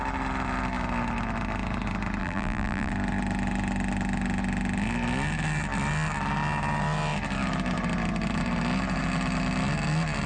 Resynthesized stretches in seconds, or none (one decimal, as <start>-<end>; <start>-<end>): 2.2-2.9